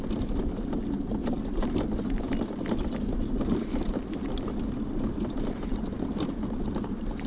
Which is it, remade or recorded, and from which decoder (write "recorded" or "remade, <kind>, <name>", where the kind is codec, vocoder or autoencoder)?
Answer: remade, vocoder, BigVGAN v2